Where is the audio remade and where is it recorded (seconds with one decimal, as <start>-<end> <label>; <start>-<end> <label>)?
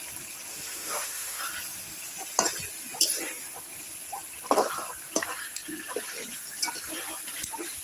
0.0-0.5 recorded; 0.5-1.4 remade; 1.4-7.8 recorded